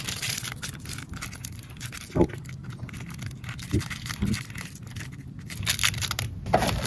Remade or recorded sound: recorded